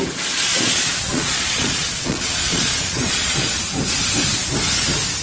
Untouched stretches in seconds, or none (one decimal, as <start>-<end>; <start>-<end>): 0.0-0.5; 3.6-5.2